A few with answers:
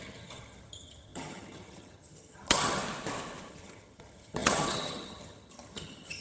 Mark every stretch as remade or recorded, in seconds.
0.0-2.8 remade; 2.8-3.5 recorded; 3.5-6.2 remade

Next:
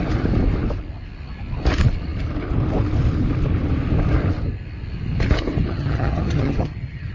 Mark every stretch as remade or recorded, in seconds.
0.0-5.7 recorded; 5.7-7.1 remade